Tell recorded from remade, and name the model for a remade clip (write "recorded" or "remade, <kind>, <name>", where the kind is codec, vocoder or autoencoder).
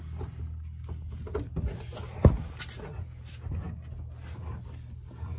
recorded